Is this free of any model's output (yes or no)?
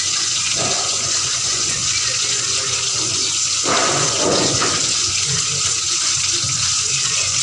no